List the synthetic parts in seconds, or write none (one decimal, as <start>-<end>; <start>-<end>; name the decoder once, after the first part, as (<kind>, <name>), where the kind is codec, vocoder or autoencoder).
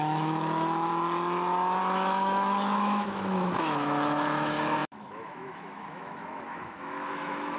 0.0-0.9 (autoencoder, DAC-VAE); 1.8-7.6